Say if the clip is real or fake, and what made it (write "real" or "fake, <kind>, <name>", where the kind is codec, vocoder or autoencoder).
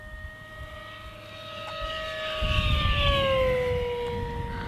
real